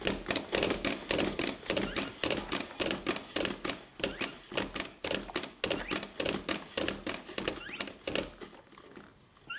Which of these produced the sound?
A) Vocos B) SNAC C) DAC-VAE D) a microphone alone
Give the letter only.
D